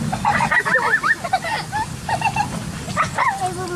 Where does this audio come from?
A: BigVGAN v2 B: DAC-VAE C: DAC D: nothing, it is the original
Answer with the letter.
D